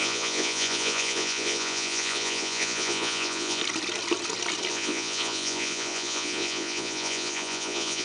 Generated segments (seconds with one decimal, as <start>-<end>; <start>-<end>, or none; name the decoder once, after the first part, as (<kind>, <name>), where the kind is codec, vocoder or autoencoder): 0.0-3.6 (vocoder, Vocos); 4.7-8.0